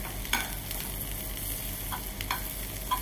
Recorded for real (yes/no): yes